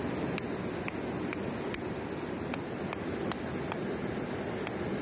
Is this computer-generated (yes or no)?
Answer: no